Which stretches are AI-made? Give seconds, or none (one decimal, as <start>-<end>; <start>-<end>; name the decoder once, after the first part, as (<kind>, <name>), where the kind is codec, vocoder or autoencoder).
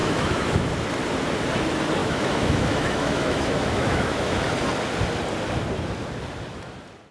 0.0-0.7 (autoencoder, DAC-VAE); 2.0-4.4